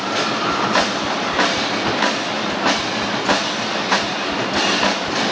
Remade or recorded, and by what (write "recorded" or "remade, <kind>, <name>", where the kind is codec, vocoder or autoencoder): recorded